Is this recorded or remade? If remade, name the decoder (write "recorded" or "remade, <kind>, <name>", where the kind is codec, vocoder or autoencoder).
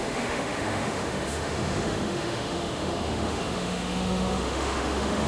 remade, autoencoder, DAC-VAE